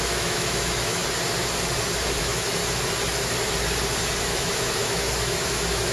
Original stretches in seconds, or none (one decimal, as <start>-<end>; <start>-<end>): 1.0-2.2; 2.6-4.2